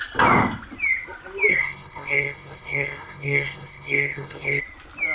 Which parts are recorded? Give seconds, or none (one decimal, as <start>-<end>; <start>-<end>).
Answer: 0.0-1.5; 4.6-5.1